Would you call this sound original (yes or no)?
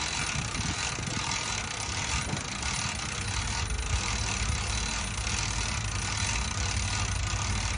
yes